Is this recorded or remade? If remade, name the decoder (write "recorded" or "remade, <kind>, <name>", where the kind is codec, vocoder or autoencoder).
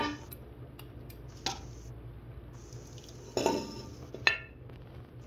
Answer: recorded